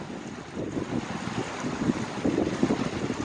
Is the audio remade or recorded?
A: recorded